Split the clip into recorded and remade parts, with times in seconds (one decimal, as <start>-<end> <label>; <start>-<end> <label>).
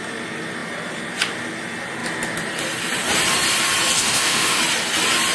0.0-4.0 recorded; 4.0-4.6 remade; 4.6-5.3 recorded